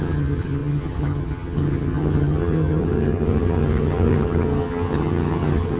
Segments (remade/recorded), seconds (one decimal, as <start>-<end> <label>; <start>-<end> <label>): 0.0-5.8 remade